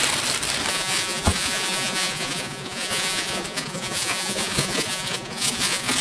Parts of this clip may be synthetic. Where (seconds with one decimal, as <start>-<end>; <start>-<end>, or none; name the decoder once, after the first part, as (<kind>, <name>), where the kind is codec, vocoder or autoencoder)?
0.7-6.0 (vocoder, Vocos)